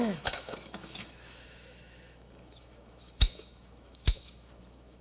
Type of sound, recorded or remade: remade